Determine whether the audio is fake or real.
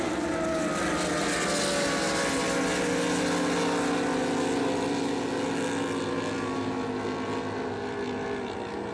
real